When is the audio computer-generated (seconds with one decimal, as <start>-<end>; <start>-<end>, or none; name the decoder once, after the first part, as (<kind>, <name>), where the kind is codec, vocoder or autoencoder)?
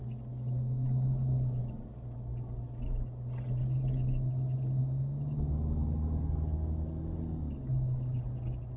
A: none